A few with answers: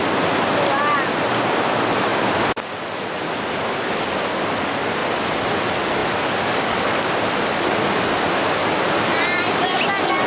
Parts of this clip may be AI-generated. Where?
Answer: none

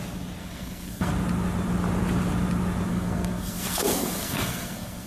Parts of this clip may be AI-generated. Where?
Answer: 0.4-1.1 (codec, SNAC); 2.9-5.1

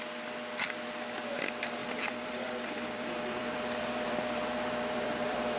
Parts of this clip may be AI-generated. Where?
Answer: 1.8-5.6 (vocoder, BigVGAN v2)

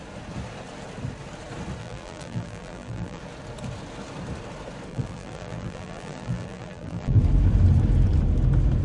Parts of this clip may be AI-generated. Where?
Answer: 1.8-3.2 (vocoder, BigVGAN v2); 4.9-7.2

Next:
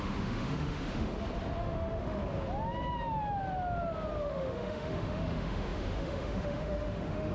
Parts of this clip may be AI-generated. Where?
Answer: 0.0-1.1 (autoencoder, DAC-VAE); 1.6-2.2; 4.2-7.3

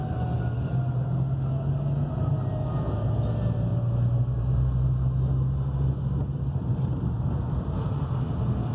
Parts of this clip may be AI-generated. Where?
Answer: none

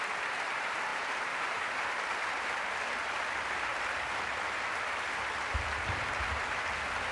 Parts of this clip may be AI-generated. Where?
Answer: 0.9-1.9 (vocoder, BigVGAN v2)

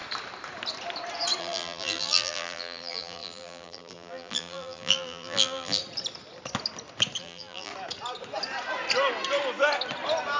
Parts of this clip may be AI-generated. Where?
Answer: 1.4-5.8 (vocoder, BigVGAN v2); 7.2-7.7